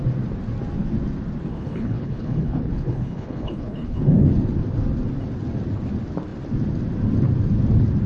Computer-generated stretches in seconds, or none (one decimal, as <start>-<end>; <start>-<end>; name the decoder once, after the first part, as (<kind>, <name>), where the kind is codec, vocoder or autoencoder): 1.5-4.3 (codec, HILCodec)